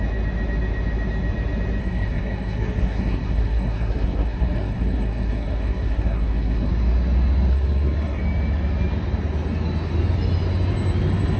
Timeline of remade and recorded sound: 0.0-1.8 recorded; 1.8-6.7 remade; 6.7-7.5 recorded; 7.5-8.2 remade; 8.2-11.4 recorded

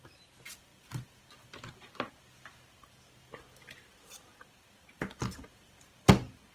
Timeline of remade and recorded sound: 0.0-6.5 recorded

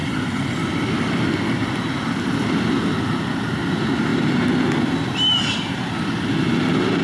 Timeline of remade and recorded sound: 0.0-7.0 recorded

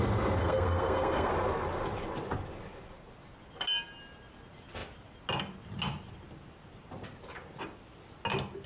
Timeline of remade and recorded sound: 0.0-0.4 recorded; 0.4-1.3 remade; 1.3-8.7 recorded

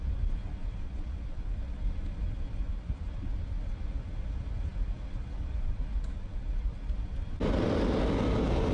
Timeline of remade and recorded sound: 0.0-8.7 recorded

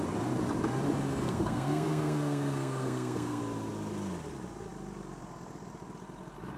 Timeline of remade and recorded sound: 0.0-1.2 recorded; 1.2-3.4 remade; 3.4-6.6 recorded